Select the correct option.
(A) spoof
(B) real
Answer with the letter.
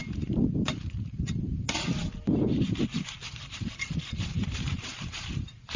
A